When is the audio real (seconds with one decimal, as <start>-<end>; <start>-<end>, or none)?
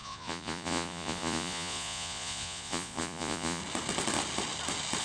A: 3.6-5.0